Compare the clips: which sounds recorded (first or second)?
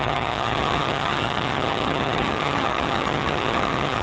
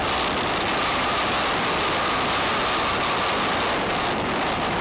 second